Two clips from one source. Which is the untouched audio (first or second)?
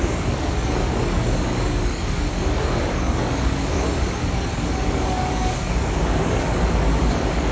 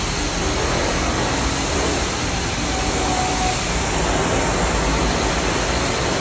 second